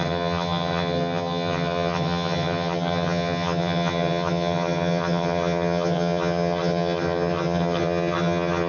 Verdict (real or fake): fake